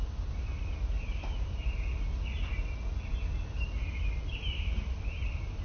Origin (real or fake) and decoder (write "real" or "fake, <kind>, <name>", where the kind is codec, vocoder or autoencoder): real